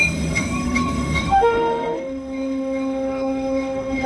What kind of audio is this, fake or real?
fake